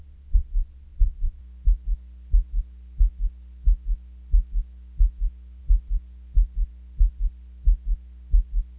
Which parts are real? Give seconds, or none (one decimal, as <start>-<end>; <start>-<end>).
1.4-8.8